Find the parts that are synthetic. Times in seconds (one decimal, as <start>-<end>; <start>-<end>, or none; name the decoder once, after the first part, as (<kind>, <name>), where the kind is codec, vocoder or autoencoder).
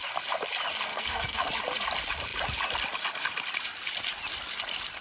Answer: 0.9-1.5 (codec, SNAC)